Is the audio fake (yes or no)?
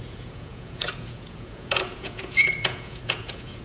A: yes